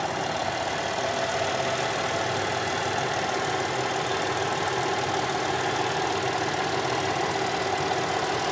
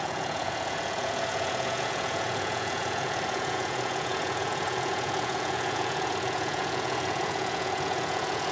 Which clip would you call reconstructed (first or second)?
second